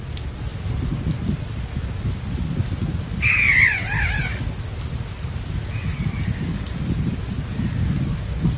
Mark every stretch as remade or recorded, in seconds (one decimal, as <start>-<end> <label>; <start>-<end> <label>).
0.0-8.6 recorded